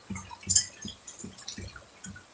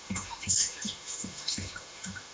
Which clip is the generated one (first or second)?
second